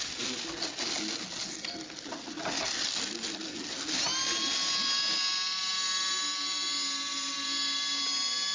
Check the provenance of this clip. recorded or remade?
recorded